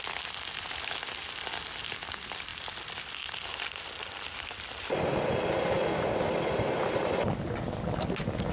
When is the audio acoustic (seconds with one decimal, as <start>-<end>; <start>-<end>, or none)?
0.0-8.5